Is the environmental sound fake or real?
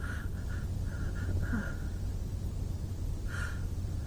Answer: fake